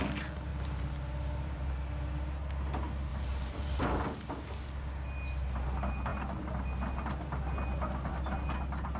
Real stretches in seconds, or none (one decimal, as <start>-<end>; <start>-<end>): 0.0-0.5; 1.7-3.1; 3.8-9.0